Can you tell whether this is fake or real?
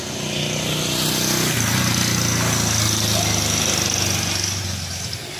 real